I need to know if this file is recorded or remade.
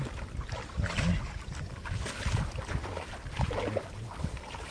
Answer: recorded